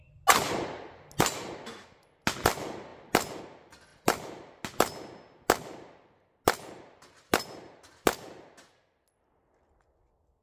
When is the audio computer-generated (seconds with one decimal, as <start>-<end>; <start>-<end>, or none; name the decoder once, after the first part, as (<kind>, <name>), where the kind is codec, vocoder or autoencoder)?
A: none